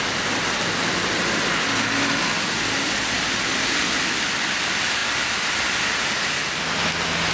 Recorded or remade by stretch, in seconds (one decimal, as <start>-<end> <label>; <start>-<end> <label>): 0.0-7.3 recorded